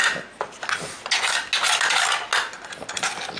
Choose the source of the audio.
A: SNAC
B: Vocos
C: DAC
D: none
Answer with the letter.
D